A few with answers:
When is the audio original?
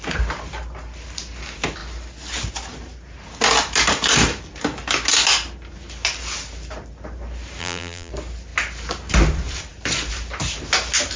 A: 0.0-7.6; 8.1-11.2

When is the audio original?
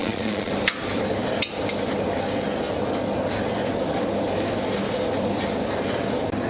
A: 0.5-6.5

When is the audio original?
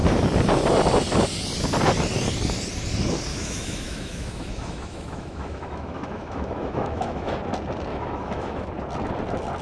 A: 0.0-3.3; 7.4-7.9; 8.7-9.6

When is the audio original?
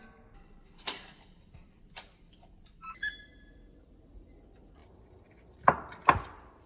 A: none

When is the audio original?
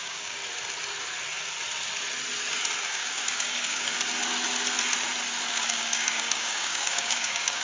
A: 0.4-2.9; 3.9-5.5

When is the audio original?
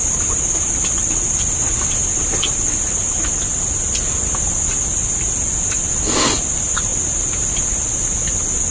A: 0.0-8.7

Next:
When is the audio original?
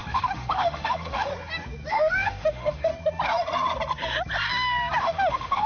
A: 1.3-1.9; 2.9-5.0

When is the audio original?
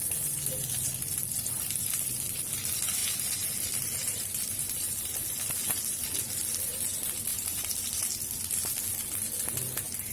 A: 0.0-3.0; 5.8-7.3; 8.0-10.1